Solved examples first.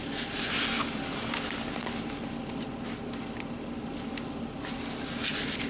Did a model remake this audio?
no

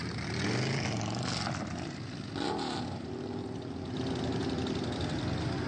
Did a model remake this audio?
no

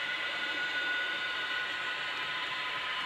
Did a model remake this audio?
yes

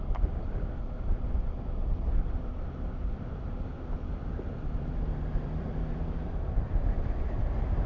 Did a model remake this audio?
yes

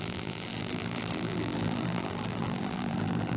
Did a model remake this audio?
yes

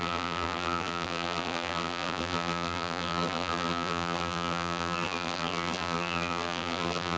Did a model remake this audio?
yes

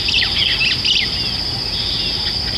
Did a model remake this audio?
no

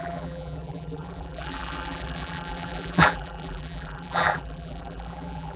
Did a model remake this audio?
yes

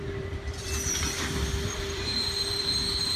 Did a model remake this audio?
yes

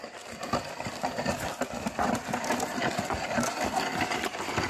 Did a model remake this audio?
no